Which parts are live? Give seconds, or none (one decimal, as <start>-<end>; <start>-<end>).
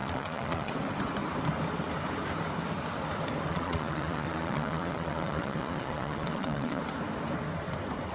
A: 0.7-3.5; 6.8-8.1